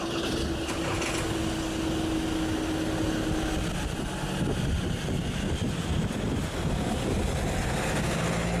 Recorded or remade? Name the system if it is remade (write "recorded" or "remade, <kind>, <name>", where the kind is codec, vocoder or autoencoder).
recorded